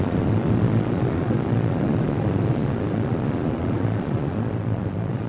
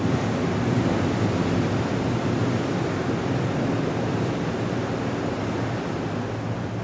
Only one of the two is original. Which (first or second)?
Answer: second